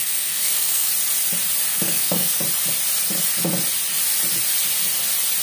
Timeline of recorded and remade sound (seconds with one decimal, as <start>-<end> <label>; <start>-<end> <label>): 0.0-0.9 remade; 0.9-1.7 recorded; 1.7-2.4 remade; 2.4-5.4 recorded

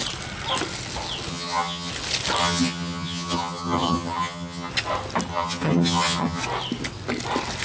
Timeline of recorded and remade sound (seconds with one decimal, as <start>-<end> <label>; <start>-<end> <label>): 0.0-1.3 recorded; 1.3-1.9 remade; 1.9-2.4 recorded; 2.4-4.7 remade; 4.7-5.3 recorded; 5.3-6.4 remade; 6.4-7.6 recorded

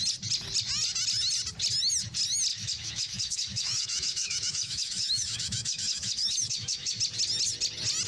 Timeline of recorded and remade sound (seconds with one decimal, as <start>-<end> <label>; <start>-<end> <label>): 0.0-2.5 recorded; 2.5-7.0 remade; 7.0-8.1 recorded

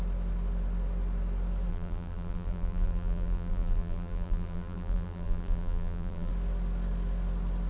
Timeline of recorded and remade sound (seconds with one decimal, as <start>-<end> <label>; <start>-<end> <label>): 0.0-1.7 recorded; 1.7-6.3 remade; 6.3-7.7 recorded

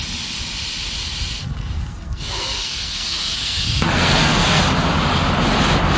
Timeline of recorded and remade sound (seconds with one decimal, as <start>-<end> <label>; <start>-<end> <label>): 0.0-1.4 recorded; 1.4-4.6 remade; 4.6-6.0 recorded

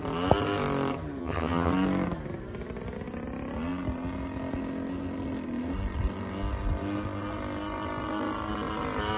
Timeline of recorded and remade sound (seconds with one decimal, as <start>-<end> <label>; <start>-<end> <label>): 0.0-1.2 recorded; 1.2-1.7 remade; 1.7-9.2 recorded

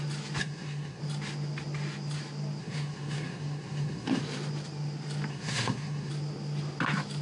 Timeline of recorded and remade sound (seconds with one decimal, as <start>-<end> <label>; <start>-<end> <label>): 0.0-0.4 recorded; 0.4-1.0 remade; 1.0-2.6 recorded; 2.6-4.2 remade; 4.2-5.3 recorded; 5.3-6.1 remade; 6.1-7.2 recorded

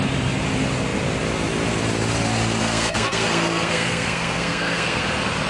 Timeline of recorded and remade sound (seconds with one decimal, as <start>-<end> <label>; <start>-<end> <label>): 0.0-2.6 recorded; 2.6-5.0 remade; 5.0-5.5 recorded